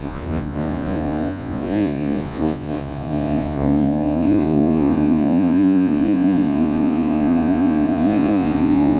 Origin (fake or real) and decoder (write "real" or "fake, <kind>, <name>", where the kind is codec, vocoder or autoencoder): fake, vocoder, Vocos